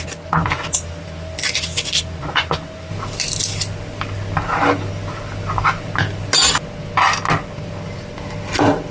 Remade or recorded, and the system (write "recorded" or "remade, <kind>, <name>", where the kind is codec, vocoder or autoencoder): recorded